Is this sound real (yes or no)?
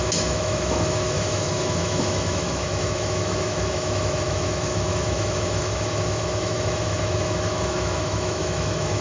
no